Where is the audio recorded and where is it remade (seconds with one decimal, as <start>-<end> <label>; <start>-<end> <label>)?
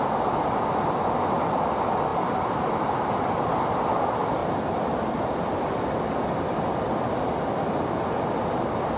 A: 0.0-2.1 recorded; 2.1-2.7 remade; 2.7-9.0 recorded